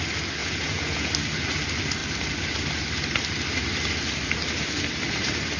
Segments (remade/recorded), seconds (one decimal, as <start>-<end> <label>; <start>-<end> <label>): 0.0-0.4 recorded; 0.4-1.1 remade; 1.1-5.6 recorded